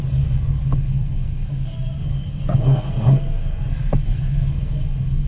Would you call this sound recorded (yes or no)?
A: no